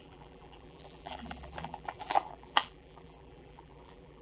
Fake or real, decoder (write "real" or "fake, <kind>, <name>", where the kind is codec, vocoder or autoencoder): fake, vocoder, BigVGAN v2